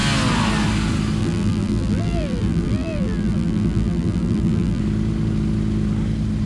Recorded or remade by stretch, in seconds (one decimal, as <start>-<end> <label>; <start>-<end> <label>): 0.0-1.2 recorded; 1.2-4.8 remade; 4.8-6.5 recorded